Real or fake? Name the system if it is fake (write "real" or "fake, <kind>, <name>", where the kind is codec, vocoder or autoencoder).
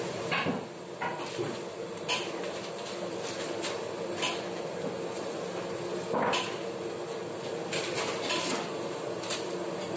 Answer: real